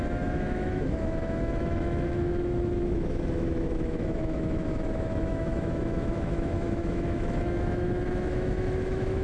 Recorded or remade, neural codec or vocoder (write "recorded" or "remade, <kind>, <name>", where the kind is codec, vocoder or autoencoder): remade, autoencoder, DAC-VAE